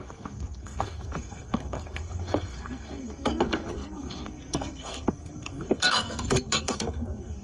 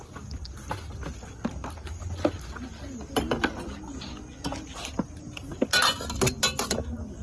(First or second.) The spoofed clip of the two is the first